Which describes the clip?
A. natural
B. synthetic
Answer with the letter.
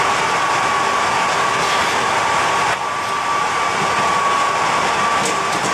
A